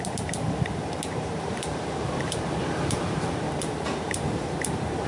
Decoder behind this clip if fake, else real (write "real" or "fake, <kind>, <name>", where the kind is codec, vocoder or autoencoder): fake, vocoder, BigVGAN v2